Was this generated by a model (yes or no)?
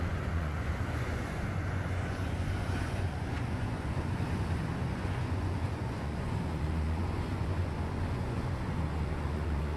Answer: yes